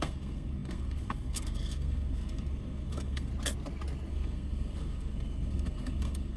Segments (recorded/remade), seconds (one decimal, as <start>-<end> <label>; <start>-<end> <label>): 0.0-3.3 remade; 3.3-4.1 recorded; 4.1-6.4 remade